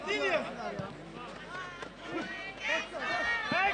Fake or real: real